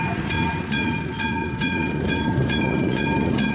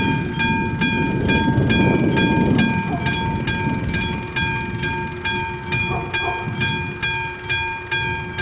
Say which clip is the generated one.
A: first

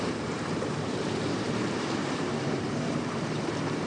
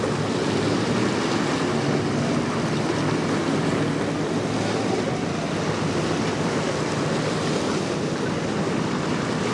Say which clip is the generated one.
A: first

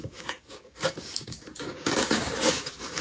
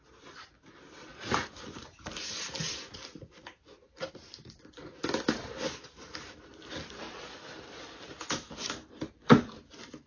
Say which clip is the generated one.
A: first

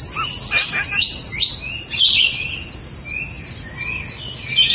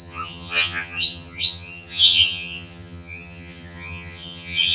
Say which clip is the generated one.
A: second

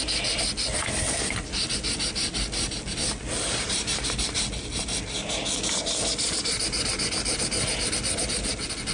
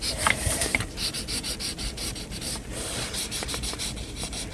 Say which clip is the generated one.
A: second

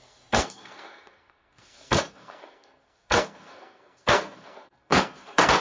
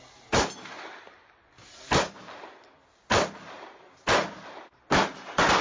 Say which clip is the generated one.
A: first